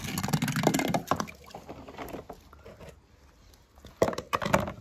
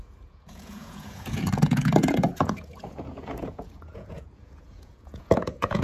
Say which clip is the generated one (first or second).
second